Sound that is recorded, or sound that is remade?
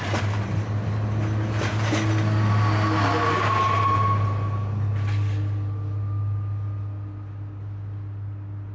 recorded